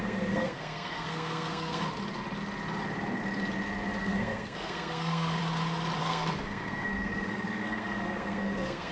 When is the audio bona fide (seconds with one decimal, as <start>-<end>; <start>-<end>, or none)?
1.8-4.0; 5.4-6.0

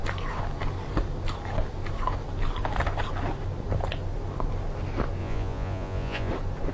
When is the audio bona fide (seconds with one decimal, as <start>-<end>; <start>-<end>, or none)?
0.0-5.2; 6.3-6.7

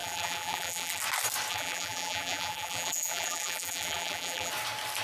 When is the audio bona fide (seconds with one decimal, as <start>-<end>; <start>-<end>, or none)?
1.0-1.5; 4.5-5.0

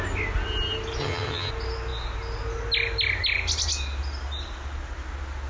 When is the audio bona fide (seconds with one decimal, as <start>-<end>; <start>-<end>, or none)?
0.0-1.0; 1.5-5.5

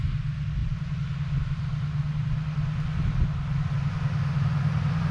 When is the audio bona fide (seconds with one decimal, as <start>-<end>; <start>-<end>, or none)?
0.0-5.1